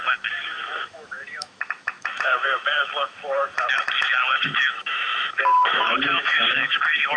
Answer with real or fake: fake